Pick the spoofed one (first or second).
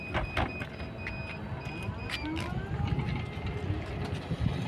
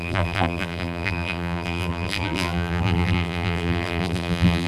second